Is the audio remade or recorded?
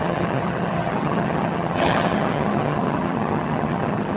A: remade